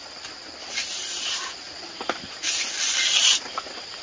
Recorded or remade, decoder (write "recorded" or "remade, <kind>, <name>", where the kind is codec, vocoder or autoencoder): recorded